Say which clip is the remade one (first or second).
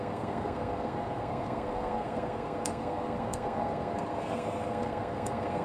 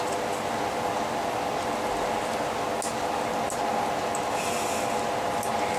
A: first